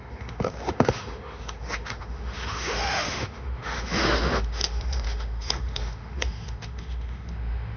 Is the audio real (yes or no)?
no